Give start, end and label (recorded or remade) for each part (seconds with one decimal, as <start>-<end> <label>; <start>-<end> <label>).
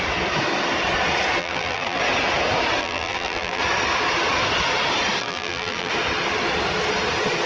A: 0.0-1.4 recorded; 1.4-2.0 remade; 2.0-2.8 recorded; 2.8-3.6 remade; 3.6-5.2 recorded; 5.2-5.9 remade; 5.9-7.5 recorded